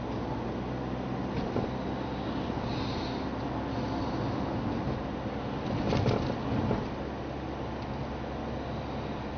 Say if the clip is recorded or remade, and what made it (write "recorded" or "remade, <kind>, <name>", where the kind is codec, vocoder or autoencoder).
recorded